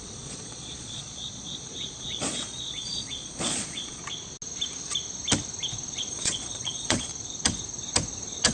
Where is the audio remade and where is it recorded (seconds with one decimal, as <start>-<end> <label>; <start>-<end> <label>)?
0.0-4.0 remade; 4.0-6.1 recorded; 6.1-7.1 remade; 7.1-8.5 recorded